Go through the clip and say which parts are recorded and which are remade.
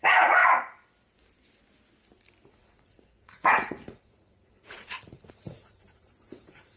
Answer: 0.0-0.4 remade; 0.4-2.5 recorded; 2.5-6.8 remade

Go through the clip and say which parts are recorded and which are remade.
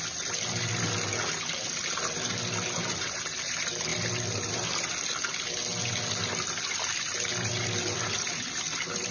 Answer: 0.0-9.1 recorded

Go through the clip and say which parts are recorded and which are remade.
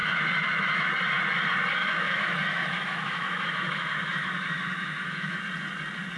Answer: 0.0-0.9 remade; 0.9-1.8 recorded; 1.8-5.4 remade; 5.4-6.2 recorded